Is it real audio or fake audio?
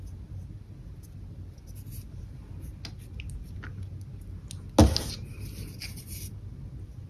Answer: real